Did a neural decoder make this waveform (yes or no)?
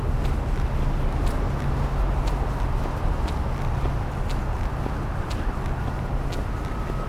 no